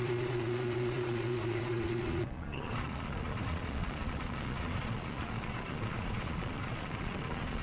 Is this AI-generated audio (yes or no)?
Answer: yes